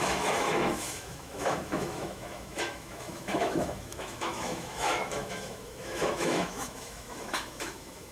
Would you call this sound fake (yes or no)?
yes